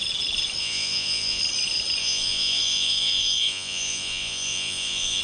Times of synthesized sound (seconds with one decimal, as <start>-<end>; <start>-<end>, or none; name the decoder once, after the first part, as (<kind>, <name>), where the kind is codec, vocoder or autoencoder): 0.6-1.4 (vocoder, Vocos); 2.0-5.2